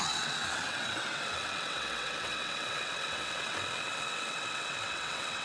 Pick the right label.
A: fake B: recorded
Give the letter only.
A